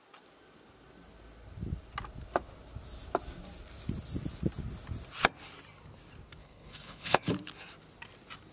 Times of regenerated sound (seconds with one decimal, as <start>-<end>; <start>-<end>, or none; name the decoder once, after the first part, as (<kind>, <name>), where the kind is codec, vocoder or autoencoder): 6.4-7.3 (codec, HILCodec)